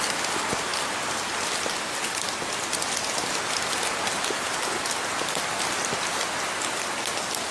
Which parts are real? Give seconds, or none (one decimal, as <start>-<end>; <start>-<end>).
0.0-7.5